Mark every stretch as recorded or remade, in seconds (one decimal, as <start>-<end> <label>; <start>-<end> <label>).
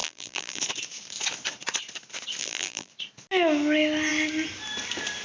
0.0-0.6 remade; 0.6-2.4 recorded; 2.4-2.9 remade; 2.9-5.2 recorded